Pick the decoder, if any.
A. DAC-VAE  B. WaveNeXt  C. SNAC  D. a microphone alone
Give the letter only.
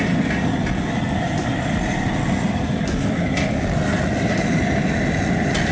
D